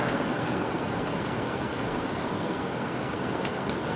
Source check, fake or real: fake